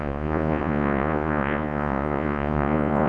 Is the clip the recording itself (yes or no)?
no